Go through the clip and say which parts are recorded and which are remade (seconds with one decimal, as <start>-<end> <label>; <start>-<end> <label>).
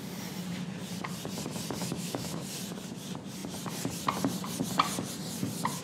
0.0-1.8 recorded; 1.8-2.4 remade; 2.4-5.8 recorded